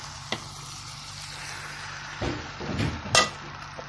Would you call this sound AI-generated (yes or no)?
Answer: no